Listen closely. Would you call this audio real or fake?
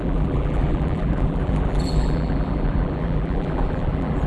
fake